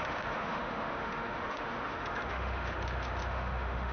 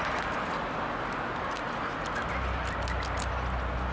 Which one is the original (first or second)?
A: second